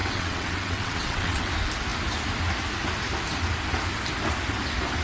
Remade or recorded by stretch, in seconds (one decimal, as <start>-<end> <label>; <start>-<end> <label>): 0.0-1.5 remade; 1.5-5.0 recorded